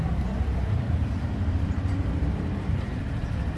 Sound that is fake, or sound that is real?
fake